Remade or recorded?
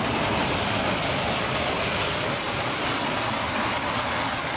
recorded